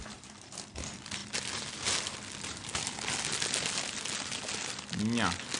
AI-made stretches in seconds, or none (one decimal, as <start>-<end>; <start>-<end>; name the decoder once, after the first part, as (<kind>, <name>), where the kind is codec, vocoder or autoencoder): none